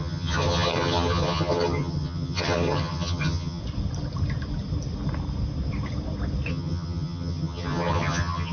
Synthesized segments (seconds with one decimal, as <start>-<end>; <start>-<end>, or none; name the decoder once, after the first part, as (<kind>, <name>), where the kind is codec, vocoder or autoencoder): 0.0-3.6 (vocoder, HiFi-GAN); 6.5-8.5